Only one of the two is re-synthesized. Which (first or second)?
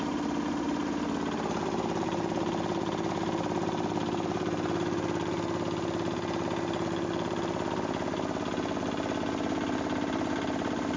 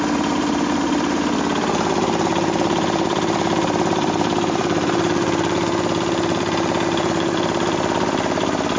second